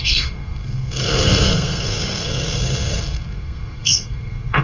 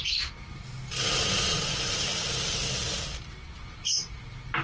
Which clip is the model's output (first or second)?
first